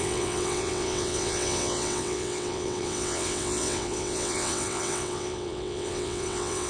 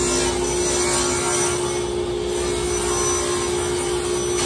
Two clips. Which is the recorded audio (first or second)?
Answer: second